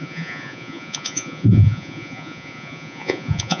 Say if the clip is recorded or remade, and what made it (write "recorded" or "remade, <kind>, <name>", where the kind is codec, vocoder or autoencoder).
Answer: remade, vocoder, Vocos